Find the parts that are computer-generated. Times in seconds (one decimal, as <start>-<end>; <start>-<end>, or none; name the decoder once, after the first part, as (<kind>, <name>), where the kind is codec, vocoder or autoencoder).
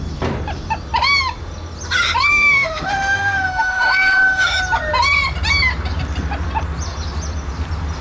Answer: 2.3-4.6 (autoencoder, DAC-VAE)